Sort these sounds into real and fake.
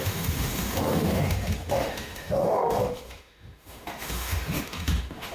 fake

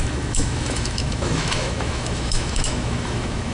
fake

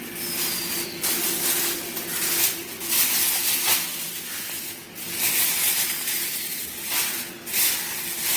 real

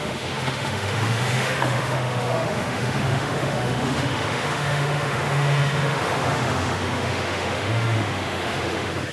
fake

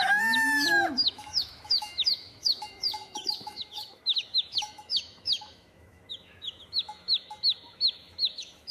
fake